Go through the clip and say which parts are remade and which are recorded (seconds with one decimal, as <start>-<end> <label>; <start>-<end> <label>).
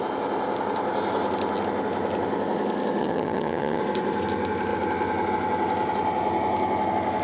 0.0-3.0 recorded; 3.0-3.8 remade; 3.8-7.2 recorded